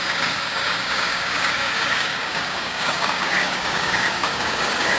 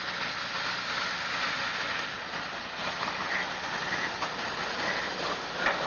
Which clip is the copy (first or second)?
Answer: first